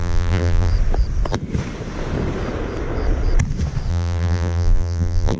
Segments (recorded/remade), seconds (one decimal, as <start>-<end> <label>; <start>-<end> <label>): 0.0-0.7 remade; 0.7-3.9 recorded; 3.9-5.4 remade